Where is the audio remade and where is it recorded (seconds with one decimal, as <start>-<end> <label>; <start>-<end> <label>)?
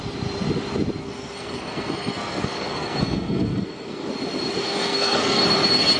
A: 0.0-1.0 recorded; 1.0-4.1 remade; 4.1-4.6 recorded; 4.6-5.4 remade; 5.4-6.0 recorded